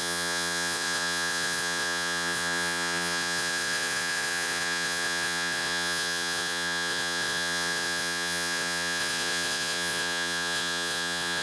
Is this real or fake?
fake